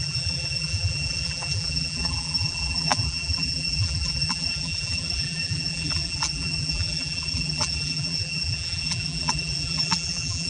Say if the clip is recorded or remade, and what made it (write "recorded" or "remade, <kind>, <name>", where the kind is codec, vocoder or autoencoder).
remade, vocoder, BigVGAN v2